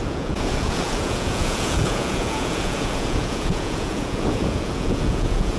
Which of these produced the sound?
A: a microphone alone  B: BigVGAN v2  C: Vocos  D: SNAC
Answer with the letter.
C